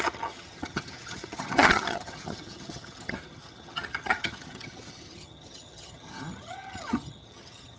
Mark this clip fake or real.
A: fake